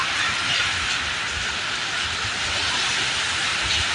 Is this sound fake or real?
real